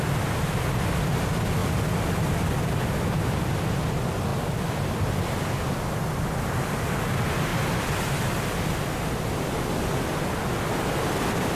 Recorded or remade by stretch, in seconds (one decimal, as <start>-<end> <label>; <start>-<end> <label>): 0.0-11.5 recorded